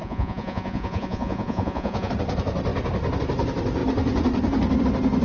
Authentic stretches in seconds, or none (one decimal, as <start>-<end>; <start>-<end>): 2.1-5.2